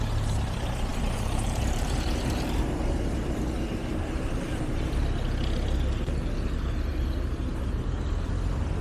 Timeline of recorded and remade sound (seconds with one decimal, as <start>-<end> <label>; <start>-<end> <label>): 0.0-0.9 recorded; 0.9-5.0 remade; 5.0-6.9 recorded; 6.9-8.3 remade; 8.3-8.8 recorded